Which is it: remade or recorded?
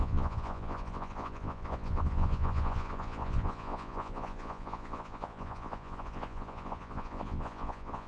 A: remade